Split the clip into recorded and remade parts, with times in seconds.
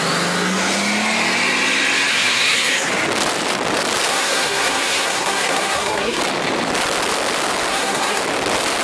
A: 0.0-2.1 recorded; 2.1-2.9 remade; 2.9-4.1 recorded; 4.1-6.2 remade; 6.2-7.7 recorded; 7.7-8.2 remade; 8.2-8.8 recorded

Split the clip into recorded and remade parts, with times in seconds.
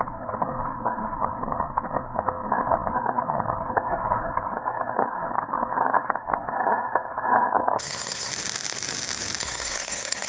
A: 0.0-8.3 remade; 8.3-9.4 recorded; 9.4-10.3 remade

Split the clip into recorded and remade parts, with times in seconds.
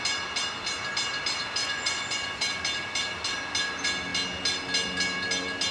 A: 0.0-1.6 recorded; 1.6-2.6 remade; 2.6-5.7 recorded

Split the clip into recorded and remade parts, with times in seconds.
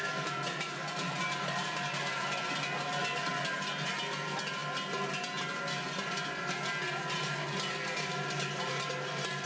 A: 0.0-9.5 recorded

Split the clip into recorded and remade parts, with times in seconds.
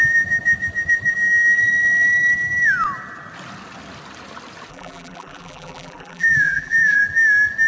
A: 0.0-4.7 recorded; 4.7-7.0 remade; 7.0-7.7 recorded